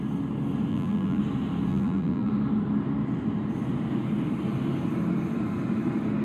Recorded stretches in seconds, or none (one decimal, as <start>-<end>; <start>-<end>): 0.0-0.7; 1.2-1.7; 2.3-6.2